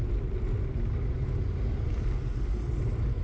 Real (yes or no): yes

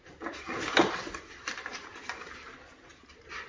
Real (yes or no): yes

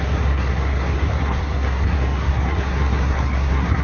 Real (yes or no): no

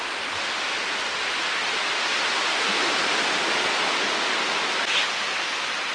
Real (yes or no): yes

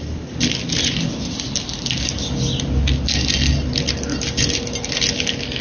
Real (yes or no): yes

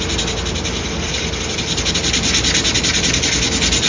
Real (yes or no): yes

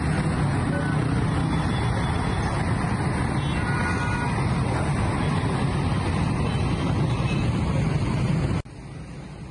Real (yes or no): yes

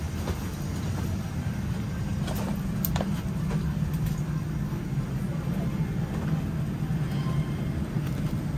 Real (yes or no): yes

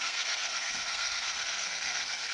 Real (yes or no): no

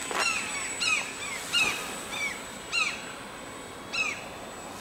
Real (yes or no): yes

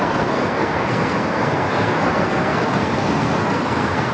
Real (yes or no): no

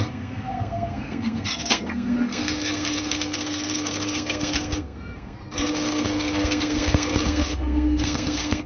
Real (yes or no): no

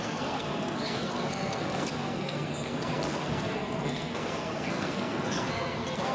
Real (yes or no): no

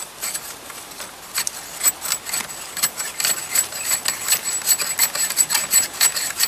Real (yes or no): yes